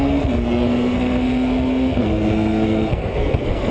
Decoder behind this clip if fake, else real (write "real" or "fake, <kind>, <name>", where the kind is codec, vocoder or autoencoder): fake, codec, SNAC